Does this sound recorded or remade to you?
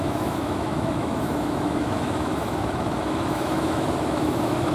remade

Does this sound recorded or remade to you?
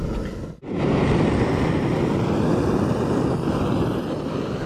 recorded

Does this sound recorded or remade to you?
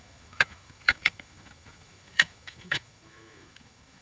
remade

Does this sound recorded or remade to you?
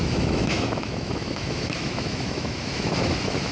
remade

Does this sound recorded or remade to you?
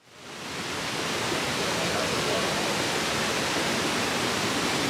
recorded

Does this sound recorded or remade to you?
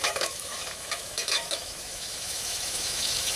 remade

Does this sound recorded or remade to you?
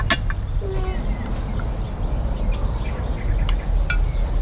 recorded